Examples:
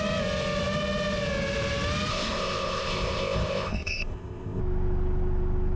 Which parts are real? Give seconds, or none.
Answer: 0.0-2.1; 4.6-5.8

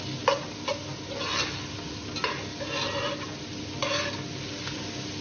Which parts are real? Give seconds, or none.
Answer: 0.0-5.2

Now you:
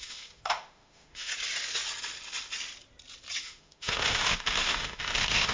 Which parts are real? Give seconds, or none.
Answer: 1.3-3.4

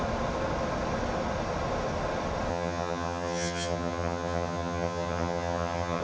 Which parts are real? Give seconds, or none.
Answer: 0.0-2.5

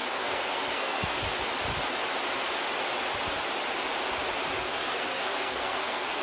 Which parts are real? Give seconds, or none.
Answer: 1.2-4.6

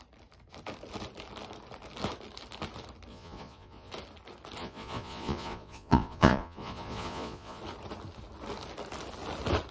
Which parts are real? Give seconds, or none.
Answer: 0.0-3.1; 3.9-4.6; 7.6-9.7

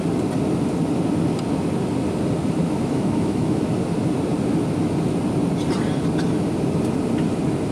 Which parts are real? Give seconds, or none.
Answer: 0.0-2.6; 3.7-7.7